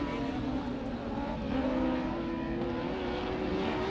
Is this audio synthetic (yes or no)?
no